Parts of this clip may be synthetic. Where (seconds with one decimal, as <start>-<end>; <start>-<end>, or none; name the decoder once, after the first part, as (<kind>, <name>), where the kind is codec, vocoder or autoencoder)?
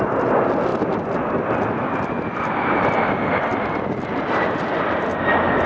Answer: none